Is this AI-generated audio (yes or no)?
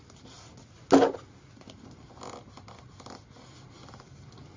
no